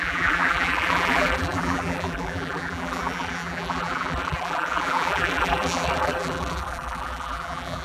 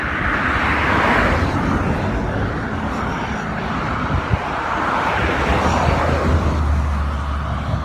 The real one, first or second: second